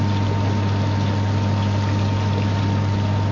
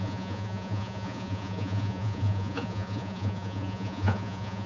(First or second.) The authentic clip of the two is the first